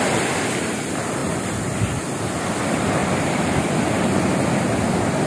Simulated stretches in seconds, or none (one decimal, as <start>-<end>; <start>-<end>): 3.0-3.8